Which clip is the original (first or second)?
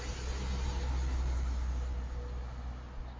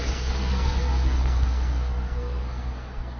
first